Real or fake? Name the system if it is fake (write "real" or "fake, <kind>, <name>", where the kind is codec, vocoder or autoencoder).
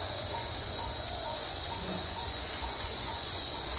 fake, vocoder, Vocos